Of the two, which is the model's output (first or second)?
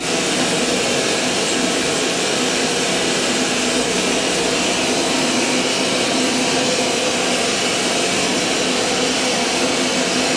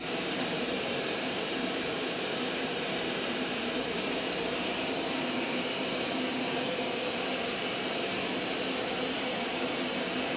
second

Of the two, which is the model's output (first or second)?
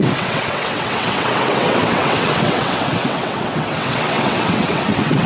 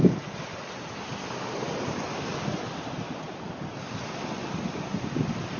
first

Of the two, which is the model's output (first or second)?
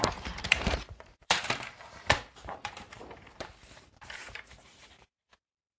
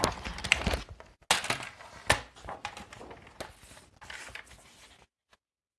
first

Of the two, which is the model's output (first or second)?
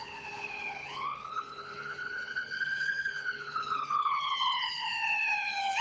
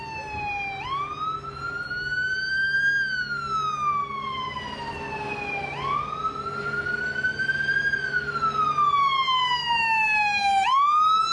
first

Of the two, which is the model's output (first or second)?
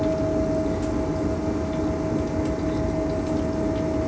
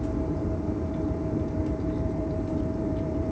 second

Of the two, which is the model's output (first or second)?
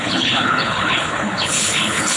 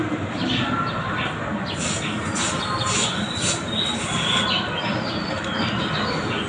first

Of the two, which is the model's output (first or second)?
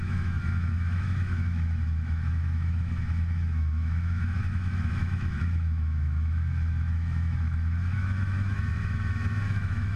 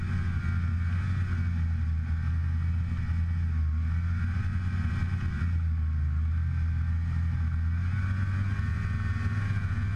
first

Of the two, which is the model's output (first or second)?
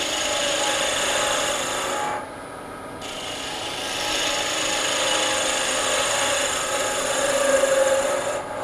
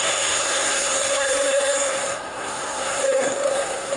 second